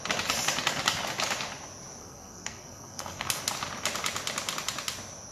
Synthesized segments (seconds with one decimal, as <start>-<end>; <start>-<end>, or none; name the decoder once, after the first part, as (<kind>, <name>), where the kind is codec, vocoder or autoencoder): 2.0-3.4 (codec, SNAC)